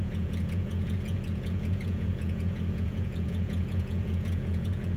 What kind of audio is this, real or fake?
fake